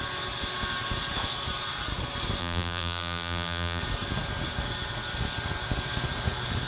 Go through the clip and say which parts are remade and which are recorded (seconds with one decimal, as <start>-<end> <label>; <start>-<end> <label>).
0.0-2.4 recorded; 2.4-3.8 remade; 3.8-6.7 recorded